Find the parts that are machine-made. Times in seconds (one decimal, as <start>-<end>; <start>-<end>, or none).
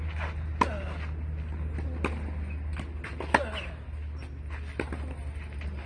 none